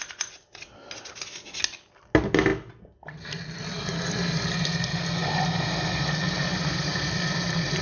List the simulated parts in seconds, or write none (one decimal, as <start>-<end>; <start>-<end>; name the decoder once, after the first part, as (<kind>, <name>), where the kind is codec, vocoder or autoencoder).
6.5-7.8 (vocoder, BigVGAN v2)